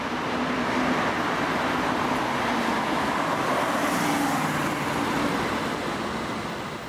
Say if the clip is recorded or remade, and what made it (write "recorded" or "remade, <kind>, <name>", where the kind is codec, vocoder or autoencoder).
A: recorded